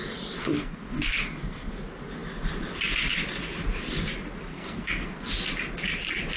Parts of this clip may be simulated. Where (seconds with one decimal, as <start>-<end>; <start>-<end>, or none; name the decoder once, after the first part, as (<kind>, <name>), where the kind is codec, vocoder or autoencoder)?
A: 0.4-1.7 (codec, SNAC); 4.5-5.3